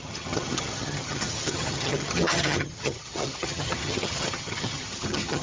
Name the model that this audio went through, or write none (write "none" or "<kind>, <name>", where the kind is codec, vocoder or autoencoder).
vocoder, HiFi-GAN